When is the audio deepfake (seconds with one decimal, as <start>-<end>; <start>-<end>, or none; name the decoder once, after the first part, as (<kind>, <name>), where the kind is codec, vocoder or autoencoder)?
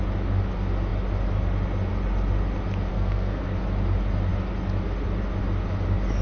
2.9-3.4 (codec, SNAC)